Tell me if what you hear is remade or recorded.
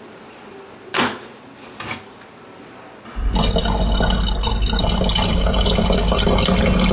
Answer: recorded